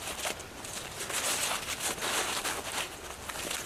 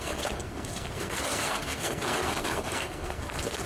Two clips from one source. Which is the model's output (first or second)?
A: second